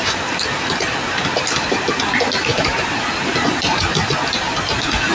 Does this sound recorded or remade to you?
remade